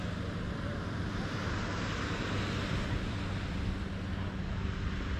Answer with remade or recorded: recorded